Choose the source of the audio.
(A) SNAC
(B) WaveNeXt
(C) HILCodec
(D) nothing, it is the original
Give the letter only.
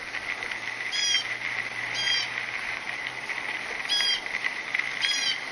D